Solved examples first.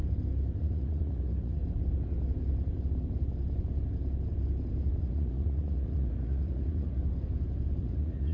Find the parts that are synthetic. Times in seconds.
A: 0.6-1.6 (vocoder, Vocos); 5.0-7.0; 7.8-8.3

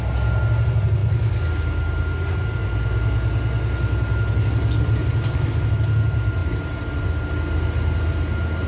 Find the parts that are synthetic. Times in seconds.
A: none

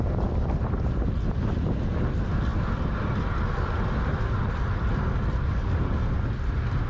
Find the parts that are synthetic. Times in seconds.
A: none

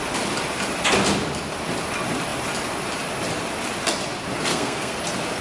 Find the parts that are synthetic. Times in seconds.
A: 4.5-5.0 (codec, SNAC)